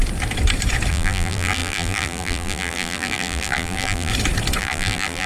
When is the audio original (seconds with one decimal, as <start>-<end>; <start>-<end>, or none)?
0.0-0.9; 4.1-4.6